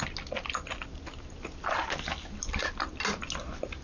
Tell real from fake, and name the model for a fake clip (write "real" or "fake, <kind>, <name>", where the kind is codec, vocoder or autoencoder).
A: real